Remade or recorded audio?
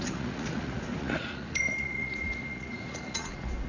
remade